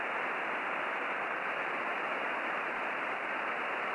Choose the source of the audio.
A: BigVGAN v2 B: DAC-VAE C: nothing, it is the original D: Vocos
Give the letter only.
A